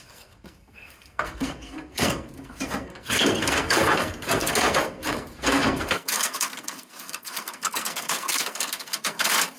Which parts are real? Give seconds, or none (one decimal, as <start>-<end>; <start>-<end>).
none